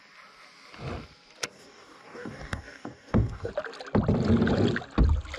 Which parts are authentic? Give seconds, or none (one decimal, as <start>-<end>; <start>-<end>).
0.0-1.5; 3.5-5.4